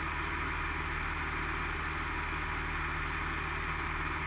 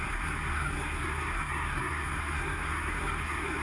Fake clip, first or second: second